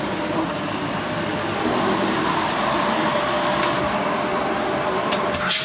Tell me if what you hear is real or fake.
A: fake